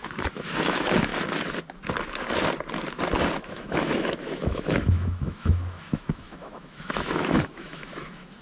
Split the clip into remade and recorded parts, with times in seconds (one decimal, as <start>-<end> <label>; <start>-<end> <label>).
0.0-1.1 remade; 1.1-3.3 recorded; 3.3-8.4 remade